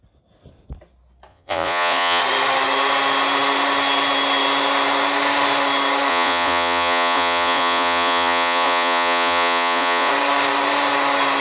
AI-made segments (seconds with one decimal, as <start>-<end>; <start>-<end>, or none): 1.3-2.2; 6.1-10.1